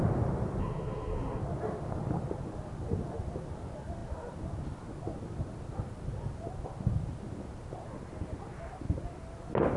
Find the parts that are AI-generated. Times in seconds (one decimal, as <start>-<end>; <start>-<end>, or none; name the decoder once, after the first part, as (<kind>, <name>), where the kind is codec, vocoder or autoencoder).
0.6-1.4 (codec, SNAC)